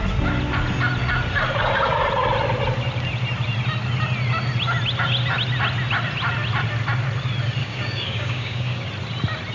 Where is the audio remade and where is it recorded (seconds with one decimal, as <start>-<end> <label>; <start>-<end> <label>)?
0.0-7.6 recorded; 7.6-8.9 remade; 8.9-9.5 recorded